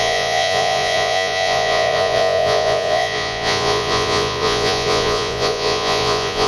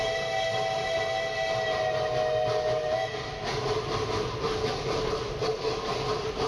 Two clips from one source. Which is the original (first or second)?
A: second